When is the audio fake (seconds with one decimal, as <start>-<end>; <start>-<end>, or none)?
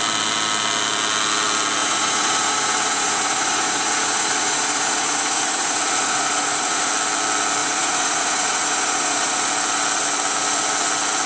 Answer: 1.8-6.9; 7.6-9.5